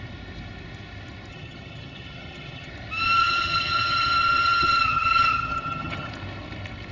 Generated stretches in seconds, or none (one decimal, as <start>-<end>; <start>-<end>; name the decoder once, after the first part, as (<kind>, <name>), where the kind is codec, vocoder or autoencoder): 1.3-2.7 (vocoder, HiFi-GAN); 3.2-6.1